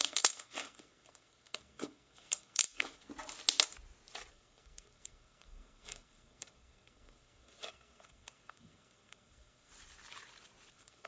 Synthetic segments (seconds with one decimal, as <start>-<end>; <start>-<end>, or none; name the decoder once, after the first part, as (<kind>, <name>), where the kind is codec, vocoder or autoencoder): 0.0-3.1 (codec, SNAC); 4.3-9.7; 10.7-11.1